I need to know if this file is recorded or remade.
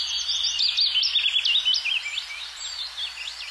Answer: recorded